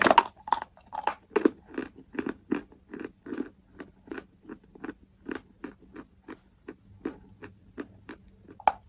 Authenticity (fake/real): real